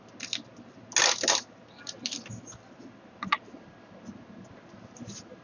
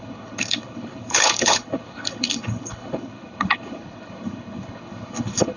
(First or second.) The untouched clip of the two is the first